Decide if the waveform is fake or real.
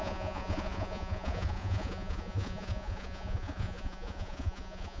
fake